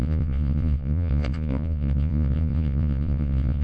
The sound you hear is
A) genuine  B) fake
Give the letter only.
B